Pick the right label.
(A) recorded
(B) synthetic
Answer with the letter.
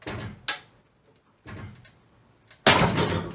A